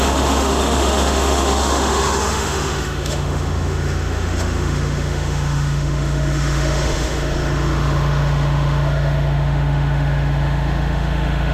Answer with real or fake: fake